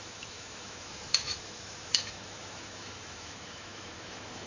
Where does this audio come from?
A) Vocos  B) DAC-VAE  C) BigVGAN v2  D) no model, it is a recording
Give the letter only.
B